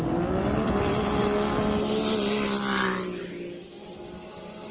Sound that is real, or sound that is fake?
real